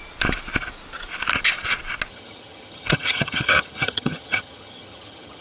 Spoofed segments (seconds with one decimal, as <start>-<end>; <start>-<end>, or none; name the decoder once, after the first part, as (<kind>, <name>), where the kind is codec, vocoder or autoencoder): 2.1-5.4 (vocoder, HiFi-GAN)